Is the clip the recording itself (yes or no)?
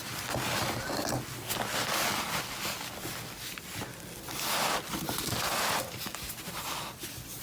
yes